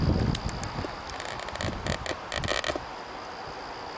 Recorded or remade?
recorded